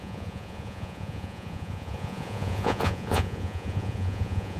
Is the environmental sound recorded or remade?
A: remade